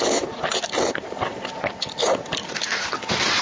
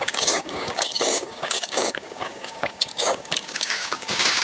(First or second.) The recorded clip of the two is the first